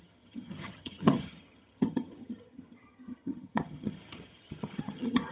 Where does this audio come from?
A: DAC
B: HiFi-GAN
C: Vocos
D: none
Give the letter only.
B